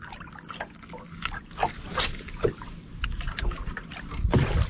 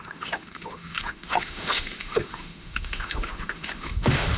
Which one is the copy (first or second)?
second